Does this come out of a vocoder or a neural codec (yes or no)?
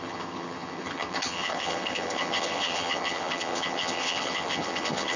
yes